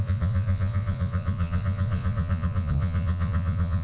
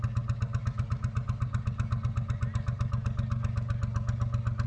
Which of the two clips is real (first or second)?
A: second